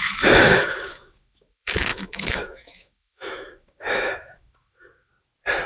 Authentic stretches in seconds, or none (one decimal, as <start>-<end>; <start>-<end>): 5.1-5.7